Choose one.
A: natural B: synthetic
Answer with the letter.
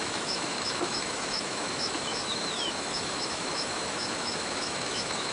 B